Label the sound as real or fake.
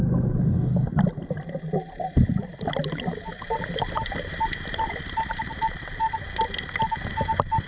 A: real